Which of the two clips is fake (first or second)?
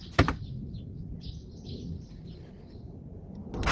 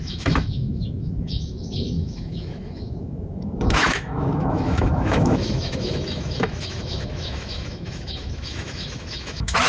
second